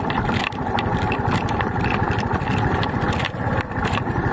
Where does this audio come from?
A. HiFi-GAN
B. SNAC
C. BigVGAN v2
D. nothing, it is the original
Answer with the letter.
C